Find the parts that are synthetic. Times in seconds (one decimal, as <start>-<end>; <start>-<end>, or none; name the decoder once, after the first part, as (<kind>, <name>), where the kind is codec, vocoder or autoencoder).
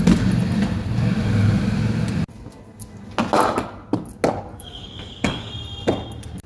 4.5-5.5 (codec, DAC)